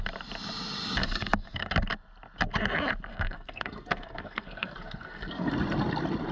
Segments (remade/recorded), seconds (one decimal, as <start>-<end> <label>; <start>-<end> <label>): 0.0-1.0 recorded; 1.0-1.7 remade; 1.7-3.1 recorded; 3.1-5.5 remade; 5.5-6.3 recorded